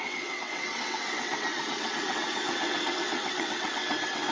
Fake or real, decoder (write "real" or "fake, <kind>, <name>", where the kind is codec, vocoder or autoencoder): fake, vocoder, WaveNeXt